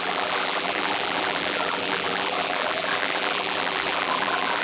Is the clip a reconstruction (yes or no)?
yes